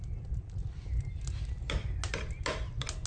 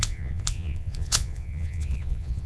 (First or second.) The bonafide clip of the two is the first